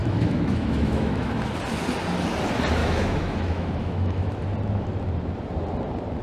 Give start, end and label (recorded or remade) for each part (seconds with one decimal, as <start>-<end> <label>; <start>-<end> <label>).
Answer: 0.0-1.5 remade; 1.5-2.8 recorded; 2.8-4.3 remade; 4.3-6.2 recorded

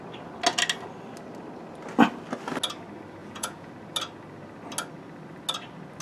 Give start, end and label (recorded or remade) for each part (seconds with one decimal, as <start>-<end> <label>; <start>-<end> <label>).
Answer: 0.0-3.2 recorded; 3.2-3.7 remade; 3.7-6.0 recorded

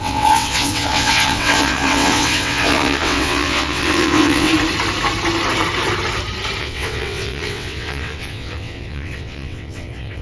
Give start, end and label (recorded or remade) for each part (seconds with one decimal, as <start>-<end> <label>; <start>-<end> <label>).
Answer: 0.0-4.5 remade; 4.5-6.6 recorded; 6.6-10.2 remade

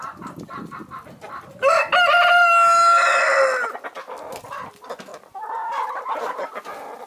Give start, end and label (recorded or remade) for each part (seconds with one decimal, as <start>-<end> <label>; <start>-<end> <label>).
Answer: 0.0-1.4 remade; 1.4-7.1 recorded